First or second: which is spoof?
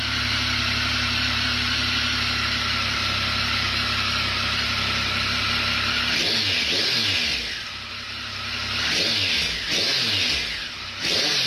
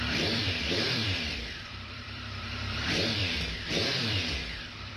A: second